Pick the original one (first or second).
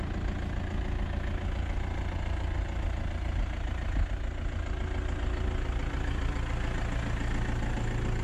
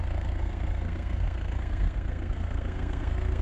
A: first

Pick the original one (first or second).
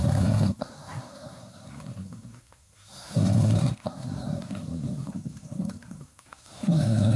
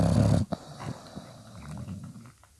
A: second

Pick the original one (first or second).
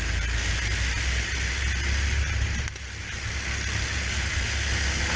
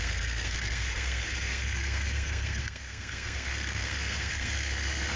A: first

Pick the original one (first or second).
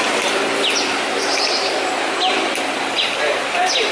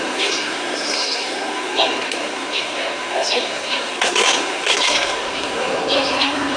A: first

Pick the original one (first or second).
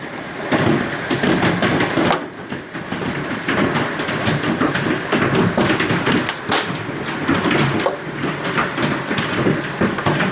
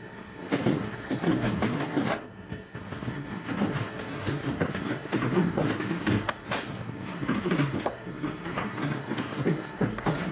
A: first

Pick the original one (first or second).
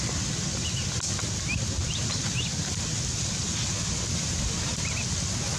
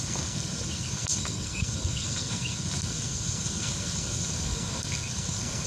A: first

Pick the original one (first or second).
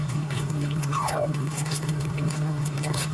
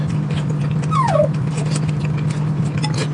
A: second